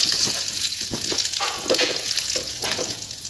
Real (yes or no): no